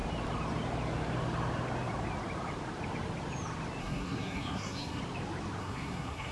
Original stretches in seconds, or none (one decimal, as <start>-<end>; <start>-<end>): 0.0-3.8; 5.0-5.6